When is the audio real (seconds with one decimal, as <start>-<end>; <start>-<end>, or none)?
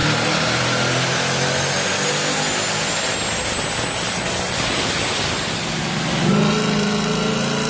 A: 0.0-7.7